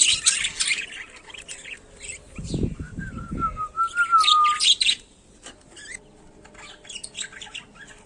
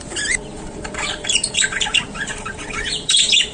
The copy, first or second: second